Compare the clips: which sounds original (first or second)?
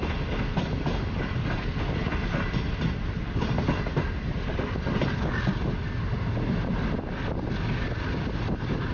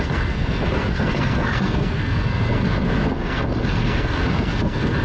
first